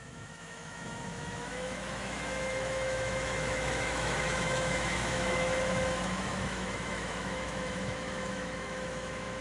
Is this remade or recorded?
remade